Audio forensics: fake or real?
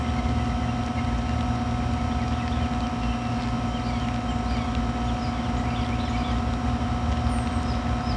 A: real